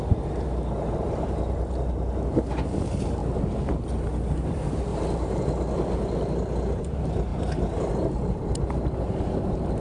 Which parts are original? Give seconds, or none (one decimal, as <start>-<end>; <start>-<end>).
0.0-4.9; 5.4-7.3; 7.9-9.8

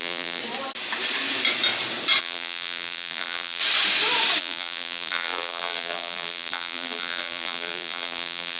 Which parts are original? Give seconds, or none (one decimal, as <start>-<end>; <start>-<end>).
0.4-2.2; 3.6-4.4

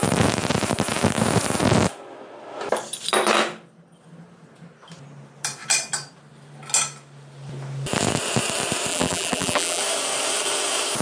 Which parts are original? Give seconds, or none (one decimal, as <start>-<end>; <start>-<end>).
0.0-8.9; 9.8-11.0

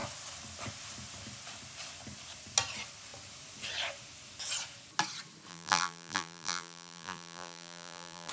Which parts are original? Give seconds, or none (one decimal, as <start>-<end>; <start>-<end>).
0.0-5.5